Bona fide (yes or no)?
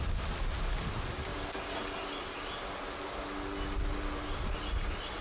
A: yes